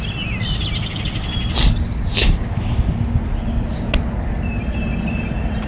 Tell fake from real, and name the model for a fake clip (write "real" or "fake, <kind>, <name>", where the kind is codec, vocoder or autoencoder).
real